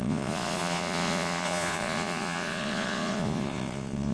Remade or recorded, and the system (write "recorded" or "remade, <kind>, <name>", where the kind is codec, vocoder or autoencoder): remade, vocoder, Vocos